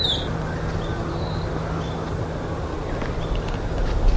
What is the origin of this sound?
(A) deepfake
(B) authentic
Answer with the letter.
B